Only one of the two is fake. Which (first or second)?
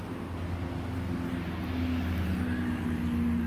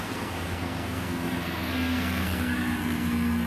second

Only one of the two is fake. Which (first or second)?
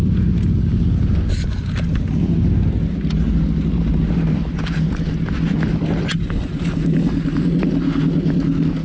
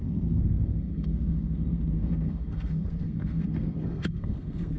second